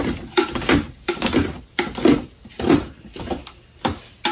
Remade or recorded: recorded